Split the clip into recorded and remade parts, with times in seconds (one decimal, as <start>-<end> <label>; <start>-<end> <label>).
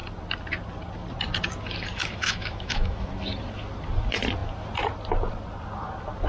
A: 0.0-2.0 recorded; 2.0-3.1 remade; 3.1-6.3 recorded